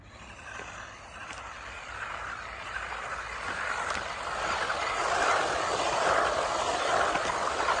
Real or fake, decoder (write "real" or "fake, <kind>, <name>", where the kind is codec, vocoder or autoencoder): real